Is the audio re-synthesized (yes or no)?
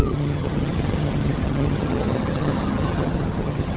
yes